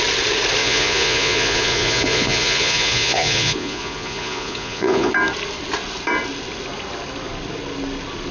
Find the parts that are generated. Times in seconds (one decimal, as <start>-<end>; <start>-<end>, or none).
0.6-5.1